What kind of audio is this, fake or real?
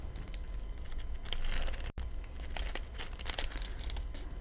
real